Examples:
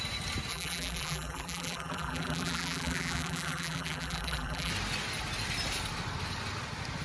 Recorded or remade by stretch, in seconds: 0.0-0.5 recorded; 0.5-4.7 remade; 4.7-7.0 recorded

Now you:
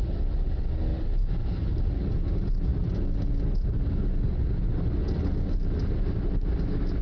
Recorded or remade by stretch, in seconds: 0.0-0.9 recorded; 0.9-2.0 remade; 2.0-7.0 recorded

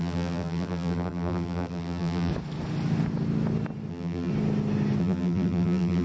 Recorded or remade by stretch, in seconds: 0.0-2.3 remade; 2.3-3.9 recorded; 3.9-4.3 remade; 4.3-5.0 recorded; 5.0-6.0 remade

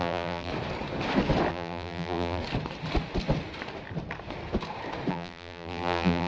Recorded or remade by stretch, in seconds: 0.0-0.5 remade; 0.5-1.5 recorded; 1.5-2.4 remade; 2.4-5.1 recorded; 5.1-6.3 remade